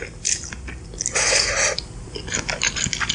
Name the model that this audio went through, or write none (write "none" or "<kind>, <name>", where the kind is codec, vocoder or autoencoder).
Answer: none